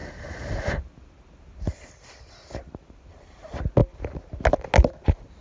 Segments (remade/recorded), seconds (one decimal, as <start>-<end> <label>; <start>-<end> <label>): 0.0-5.4 recorded